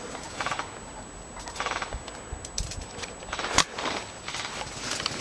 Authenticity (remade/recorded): recorded